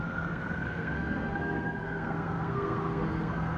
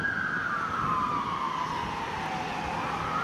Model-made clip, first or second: first